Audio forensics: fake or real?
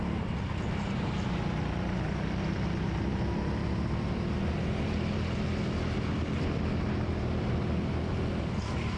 real